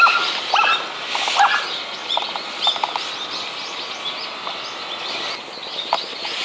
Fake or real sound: real